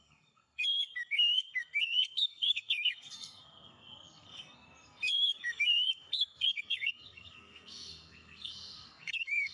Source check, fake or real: fake